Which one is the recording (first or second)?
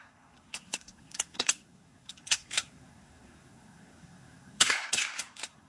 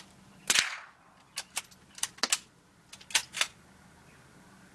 second